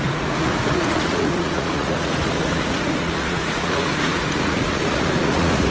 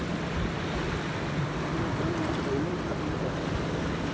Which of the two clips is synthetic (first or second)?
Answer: first